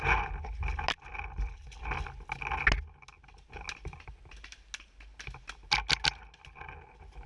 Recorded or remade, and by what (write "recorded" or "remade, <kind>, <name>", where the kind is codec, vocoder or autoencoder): recorded